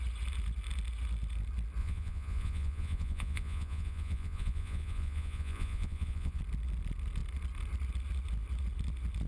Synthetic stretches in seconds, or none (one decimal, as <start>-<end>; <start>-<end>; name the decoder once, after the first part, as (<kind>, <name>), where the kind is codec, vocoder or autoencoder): 1.8-6.4 (vocoder, Vocos)